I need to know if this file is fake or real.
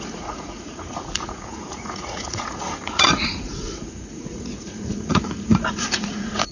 fake